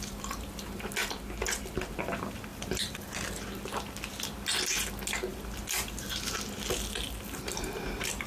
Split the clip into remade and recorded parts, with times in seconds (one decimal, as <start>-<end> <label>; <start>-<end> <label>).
0.0-2.5 recorded; 2.5-3.1 remade; 3.1-5.3 recorded; 5.3-6.4 remade; 6.4-8.3 recorded